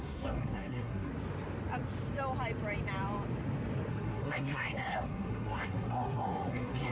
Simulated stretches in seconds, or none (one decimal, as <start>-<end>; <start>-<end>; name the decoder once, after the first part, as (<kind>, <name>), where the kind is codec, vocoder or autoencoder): 0.0-1.1 (codec, SNAC); 3.9-6.9

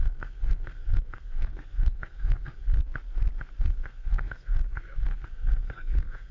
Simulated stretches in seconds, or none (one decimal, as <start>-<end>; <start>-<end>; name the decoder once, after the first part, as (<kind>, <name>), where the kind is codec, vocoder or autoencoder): 0.0-2.8 (codec, SNAC); 3.6-6.3

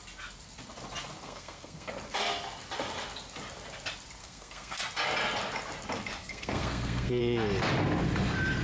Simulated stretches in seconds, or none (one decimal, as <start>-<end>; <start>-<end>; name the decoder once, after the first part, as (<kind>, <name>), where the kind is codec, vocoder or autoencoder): 1.2-1.9 (codec, SNAC); 4.2-4.8; 6.2-7.2

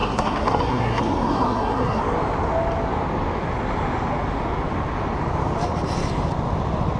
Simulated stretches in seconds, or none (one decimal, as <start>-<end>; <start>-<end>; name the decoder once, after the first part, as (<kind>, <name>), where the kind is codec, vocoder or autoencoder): 0.0-2.0 (codec, SNAC)

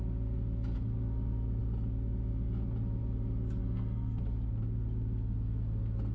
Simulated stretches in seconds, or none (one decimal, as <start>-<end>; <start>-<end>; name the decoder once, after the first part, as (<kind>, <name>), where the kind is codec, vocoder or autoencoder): 3.6-4.2 (codec, SNAC)

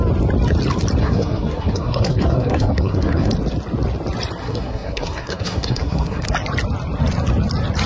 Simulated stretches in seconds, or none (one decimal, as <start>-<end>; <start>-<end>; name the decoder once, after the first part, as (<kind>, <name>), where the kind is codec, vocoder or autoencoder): 1.0-3.3 (codec, SNAC); 4.4-6.2